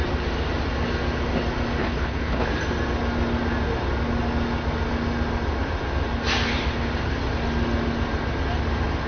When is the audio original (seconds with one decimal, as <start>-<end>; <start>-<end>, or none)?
0.0-1.8; 2.5-9.1